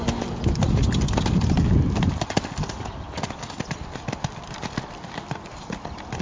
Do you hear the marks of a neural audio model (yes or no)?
no